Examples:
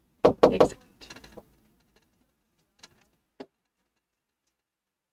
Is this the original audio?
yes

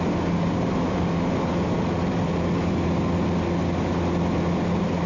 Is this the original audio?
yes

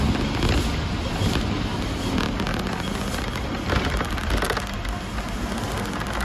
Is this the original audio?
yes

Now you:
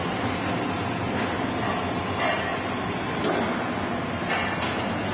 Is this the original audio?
yes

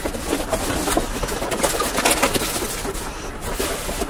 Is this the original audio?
yes